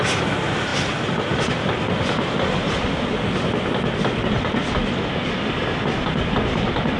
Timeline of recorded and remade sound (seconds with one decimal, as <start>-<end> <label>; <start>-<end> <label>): 0.0-7.0 recorded